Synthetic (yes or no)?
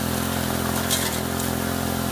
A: no